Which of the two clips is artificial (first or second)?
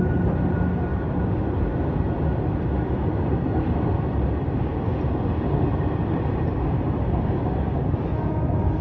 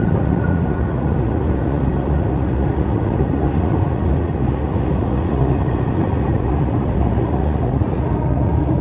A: second